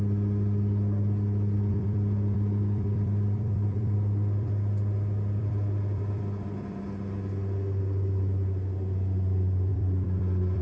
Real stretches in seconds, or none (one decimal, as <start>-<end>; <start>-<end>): 0.0-1.7; 6.8-9.7